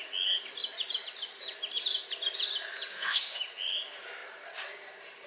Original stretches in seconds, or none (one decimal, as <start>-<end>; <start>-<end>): 0.0-2.9; 3.4-5.3